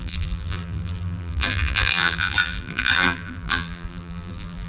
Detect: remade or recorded remade